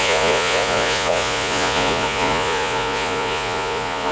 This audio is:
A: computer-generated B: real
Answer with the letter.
A